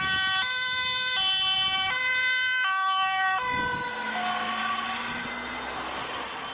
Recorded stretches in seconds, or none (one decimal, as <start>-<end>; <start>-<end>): 0.0-6.5